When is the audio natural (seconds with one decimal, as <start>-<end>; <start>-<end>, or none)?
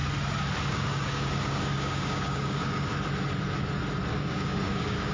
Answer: 0.0-0.7; 2.9-4.1